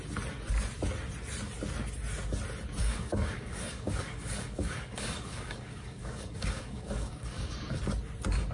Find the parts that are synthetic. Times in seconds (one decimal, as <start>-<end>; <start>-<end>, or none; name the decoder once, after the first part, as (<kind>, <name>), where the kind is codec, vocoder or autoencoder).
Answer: 2.8-7.8 (codec, DAC)